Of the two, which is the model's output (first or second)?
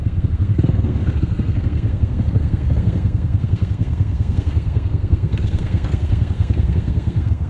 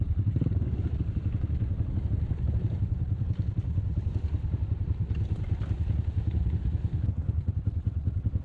first